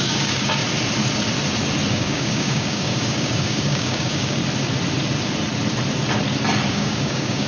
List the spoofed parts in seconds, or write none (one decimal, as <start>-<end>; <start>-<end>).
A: 0.0-0.6; 1.9-4.4; 6.7-7.5

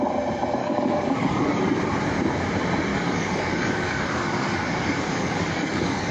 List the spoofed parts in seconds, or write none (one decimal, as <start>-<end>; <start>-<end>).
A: 0.6-1.6; 2.9-6.1

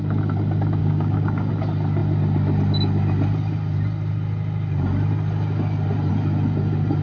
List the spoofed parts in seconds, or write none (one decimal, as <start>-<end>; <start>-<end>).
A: 0.8-1.5

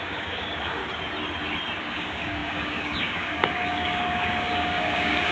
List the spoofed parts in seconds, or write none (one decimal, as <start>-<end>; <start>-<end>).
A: 0.0-0.8; 1.8-5.3

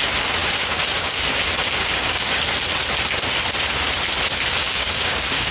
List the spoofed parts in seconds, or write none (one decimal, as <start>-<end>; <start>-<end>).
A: 0.4-1.4; 1.8-2.4; 4.6-5.5